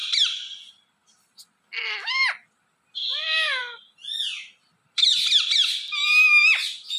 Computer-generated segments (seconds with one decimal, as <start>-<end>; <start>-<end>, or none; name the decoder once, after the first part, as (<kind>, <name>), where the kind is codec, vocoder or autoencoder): none